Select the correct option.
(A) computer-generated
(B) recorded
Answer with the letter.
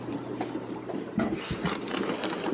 A